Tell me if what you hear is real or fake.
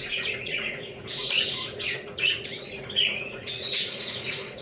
fake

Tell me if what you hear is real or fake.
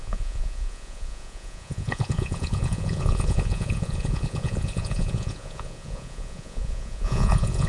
fake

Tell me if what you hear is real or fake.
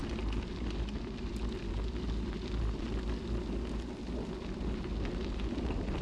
real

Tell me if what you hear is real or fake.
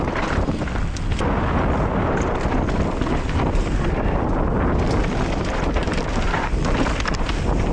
real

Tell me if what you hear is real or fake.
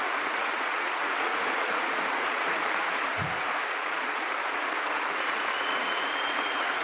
fake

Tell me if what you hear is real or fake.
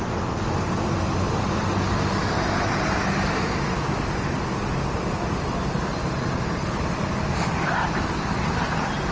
real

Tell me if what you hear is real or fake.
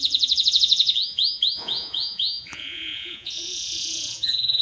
fake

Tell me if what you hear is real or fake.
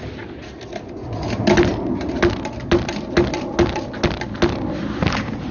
real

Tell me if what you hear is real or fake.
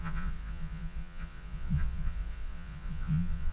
fake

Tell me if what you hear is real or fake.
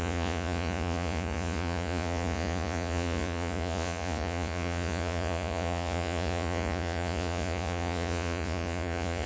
fake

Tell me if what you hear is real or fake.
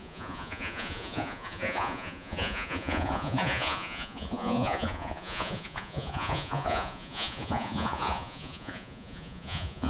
fake